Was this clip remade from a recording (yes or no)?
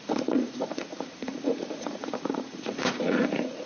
yes